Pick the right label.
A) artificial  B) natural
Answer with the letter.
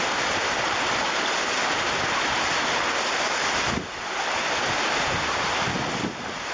B